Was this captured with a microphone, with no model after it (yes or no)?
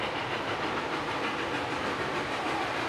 yes